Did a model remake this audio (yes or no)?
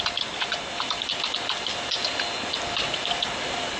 no